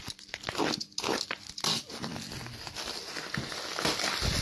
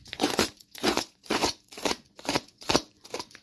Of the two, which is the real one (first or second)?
first